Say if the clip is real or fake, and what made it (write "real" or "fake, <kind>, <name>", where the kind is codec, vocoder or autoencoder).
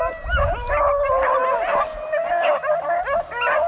real